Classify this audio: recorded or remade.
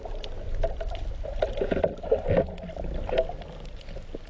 recorded